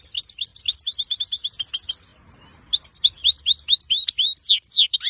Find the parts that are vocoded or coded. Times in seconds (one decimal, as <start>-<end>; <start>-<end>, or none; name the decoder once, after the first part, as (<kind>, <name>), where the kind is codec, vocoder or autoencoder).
0.5-1.2 (vocoder, BigVGAN v2); 2.1-4.5